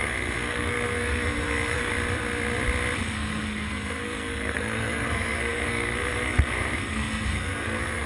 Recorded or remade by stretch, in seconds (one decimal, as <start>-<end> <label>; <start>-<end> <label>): 0.0-1.9 remade; 1.9-3.0 recorded; 3.0-8.1 remade